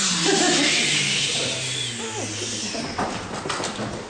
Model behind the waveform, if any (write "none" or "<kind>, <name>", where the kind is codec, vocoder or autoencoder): none